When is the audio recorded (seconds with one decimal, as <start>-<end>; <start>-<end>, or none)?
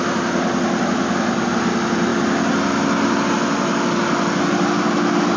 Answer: 0.0-5.4